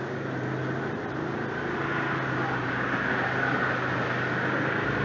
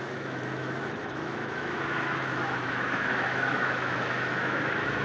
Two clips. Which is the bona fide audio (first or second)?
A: first